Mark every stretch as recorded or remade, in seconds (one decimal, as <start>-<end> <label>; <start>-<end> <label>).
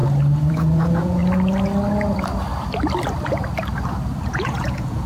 0.0-0.5 recorded; 0.5-1.2 remade; 1.2-4.3 recorded; 4.3-5.1 remade